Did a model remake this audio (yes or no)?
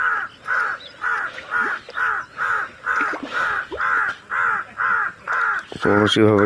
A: no